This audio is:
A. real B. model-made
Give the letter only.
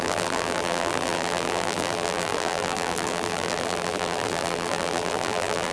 B